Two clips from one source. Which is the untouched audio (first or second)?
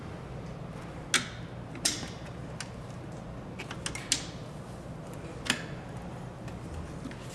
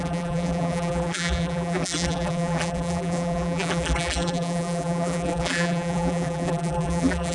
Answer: first